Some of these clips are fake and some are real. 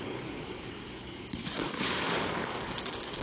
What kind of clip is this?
fake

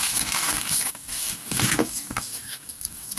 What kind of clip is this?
fake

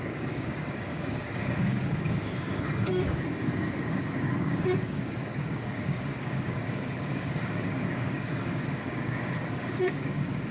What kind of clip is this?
fake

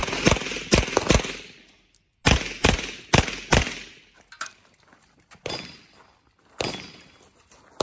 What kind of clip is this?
real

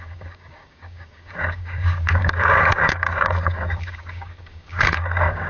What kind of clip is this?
fake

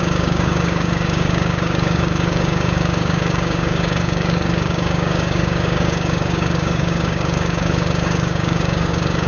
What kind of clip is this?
fake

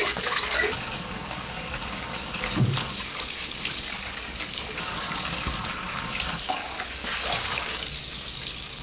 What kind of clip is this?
fake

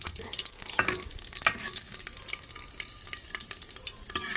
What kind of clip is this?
real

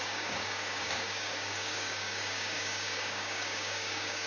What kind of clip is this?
fake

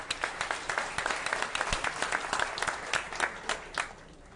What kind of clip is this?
real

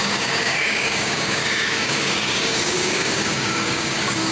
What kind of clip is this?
fake